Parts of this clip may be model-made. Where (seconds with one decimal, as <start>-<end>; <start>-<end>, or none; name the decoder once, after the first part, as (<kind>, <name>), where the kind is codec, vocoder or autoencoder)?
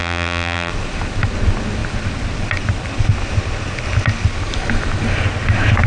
0.0-0.7 (vocoder, BigVGAN v2)